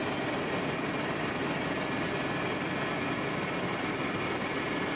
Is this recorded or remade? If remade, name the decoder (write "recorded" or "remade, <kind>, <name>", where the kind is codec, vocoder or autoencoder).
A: remade, vocoder, BigVGAN v2